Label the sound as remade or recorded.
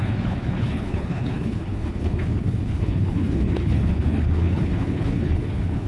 remade